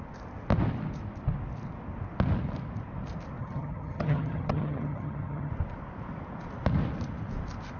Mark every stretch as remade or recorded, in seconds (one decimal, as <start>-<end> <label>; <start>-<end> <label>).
0.0-3.4 recorded; 3.4-5.5 remade; 5.5-7.8 recorded